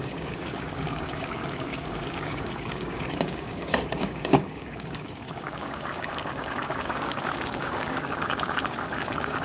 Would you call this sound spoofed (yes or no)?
yes